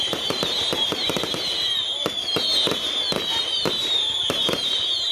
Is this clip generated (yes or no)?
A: yes